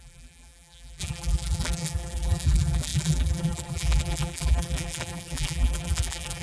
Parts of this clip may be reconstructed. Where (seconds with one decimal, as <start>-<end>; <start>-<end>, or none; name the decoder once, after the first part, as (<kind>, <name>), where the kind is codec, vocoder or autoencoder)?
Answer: 0.0-6.4 (vocoder, BigVGAN v2)